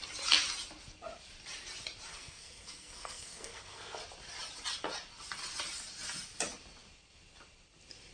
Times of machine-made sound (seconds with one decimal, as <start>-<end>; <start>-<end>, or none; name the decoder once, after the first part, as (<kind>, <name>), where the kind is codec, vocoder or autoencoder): 2.1-4.0 (codec, SNAC)